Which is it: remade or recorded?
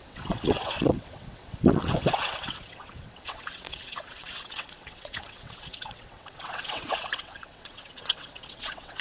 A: remade